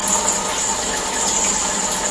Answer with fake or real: real